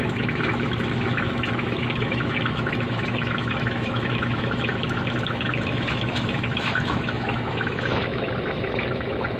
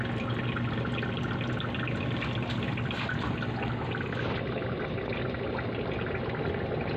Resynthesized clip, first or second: first